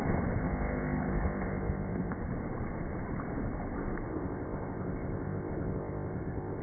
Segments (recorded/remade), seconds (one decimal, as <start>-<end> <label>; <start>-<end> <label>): 0.0-0.4 recorded; 0.4-2.2 remade; 2.2-4.1 recorded; 4.1-6.6 remade